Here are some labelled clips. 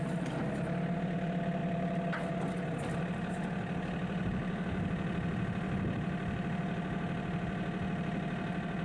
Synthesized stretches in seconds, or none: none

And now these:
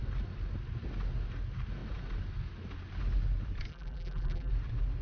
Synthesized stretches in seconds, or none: 3.7-4.5

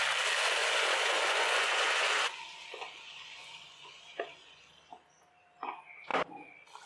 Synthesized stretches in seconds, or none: 0.6-4.7

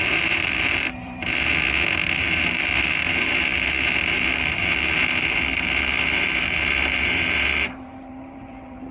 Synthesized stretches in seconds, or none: 0.0-1.5; 2.2-8.9

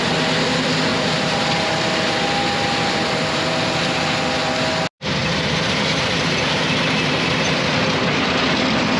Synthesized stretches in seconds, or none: 0.9-1.7; 5.2-6.4